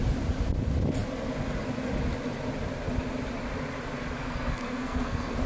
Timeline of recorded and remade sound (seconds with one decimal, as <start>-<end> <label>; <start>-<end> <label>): 0.0-4.2 recorded; 4.2-5.5 remade